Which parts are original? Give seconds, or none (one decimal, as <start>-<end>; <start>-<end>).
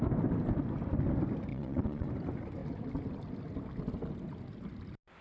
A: 0.0-1.5; 2.1-5.2